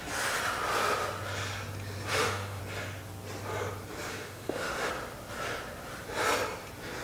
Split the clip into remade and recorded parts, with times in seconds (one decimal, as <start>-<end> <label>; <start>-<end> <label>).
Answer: 0.0-2.1 recorded; 2.1-2.6 remade; 2.6-4.1 recorded; 4.1-4.9 remade; 4.9-7.0 recorded